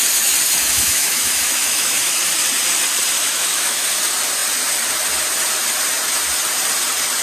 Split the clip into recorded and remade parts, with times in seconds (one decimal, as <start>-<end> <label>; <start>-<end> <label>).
0.0-0.6 recorded; 0.6-2.2 remade; 2.2-3.2 recorded; 3.2-3.8 remade; 3.8-7.2 recorded